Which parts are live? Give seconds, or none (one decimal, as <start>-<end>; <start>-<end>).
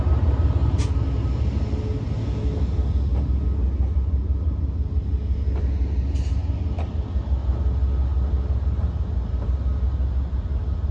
0.0-10.9